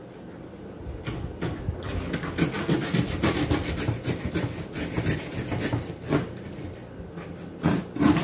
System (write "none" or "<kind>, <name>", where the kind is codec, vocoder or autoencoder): none